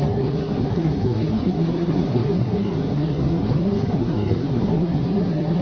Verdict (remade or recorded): remade